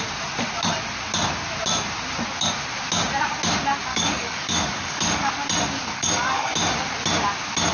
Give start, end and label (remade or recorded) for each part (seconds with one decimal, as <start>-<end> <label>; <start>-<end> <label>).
0.0-3.9 recorded; 3.9-5.3 remade; 5.3-5.8 recorded; 5.8-6.5 remade; 6.5-7.7 recorded